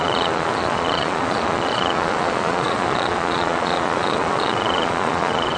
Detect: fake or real fake